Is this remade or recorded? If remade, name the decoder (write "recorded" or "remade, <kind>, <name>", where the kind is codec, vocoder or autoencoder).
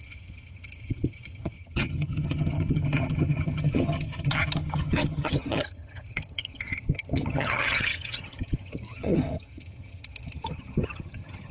remade, vocoder, HiFi-GAN